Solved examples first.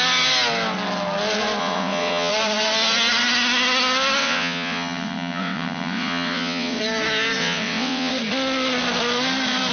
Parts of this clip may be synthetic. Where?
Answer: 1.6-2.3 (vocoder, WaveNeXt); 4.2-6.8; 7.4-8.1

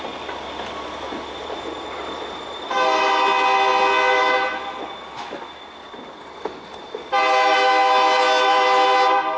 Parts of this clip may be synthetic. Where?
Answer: none

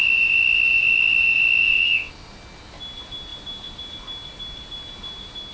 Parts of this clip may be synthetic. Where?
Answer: 1.6-2.1 (vocoder, WaveNeXt)